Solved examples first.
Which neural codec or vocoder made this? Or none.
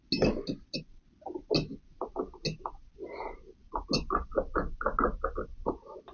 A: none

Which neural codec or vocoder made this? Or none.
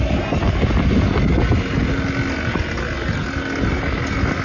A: none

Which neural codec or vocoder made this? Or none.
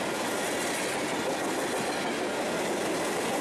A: none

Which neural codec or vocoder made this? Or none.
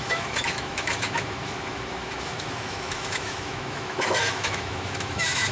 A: autoencoder, DAC-VAE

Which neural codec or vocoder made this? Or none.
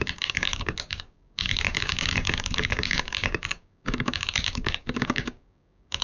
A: codec, DAC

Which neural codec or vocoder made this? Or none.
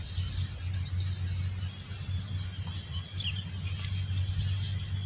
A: none